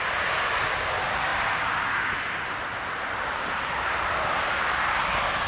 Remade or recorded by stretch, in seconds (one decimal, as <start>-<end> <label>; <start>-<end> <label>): 0.0-5.5 recorded